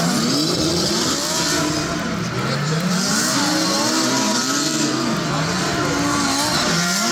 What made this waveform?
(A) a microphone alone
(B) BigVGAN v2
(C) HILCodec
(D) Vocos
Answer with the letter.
A